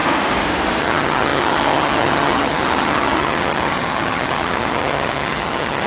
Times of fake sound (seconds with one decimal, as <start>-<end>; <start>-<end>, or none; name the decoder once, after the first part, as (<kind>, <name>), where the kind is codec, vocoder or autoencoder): 0.8-5.9 (vocoder, HiFi-GAN)